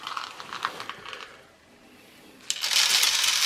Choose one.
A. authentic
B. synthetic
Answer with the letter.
A